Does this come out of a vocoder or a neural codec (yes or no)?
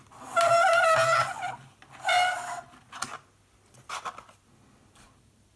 no